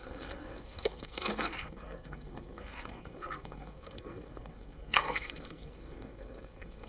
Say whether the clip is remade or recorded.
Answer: remade